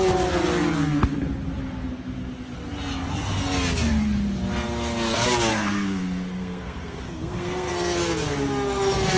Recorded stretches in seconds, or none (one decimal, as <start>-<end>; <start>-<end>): 0.0-5.5; 7.7-9.2